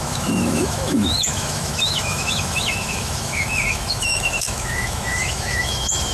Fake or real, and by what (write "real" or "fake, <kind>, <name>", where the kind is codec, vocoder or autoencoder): fake, autoencoder, DAC-VAE